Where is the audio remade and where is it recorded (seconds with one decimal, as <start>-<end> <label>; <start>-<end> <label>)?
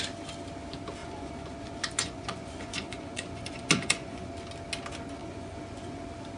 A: 0.0-1.0 recorded; 1.0-4.3 remade; 4.3-5.2 recorded; 5.2-6.0 remade; 6.0-6.4 recorded